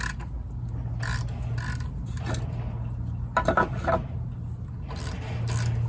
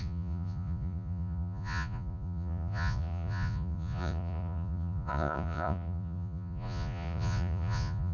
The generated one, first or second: second